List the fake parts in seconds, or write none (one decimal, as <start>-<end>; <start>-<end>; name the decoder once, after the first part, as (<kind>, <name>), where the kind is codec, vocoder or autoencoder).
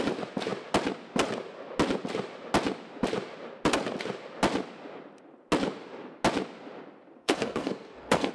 7.2-8.3 (codec, SNAC)